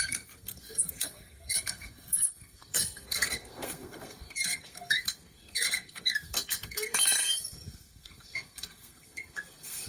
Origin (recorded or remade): remade